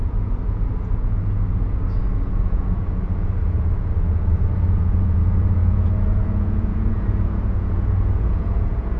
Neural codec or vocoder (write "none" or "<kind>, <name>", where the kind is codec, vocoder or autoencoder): vocoder, Vocos